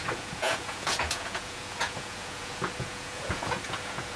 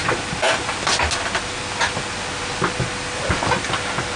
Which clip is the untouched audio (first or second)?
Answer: second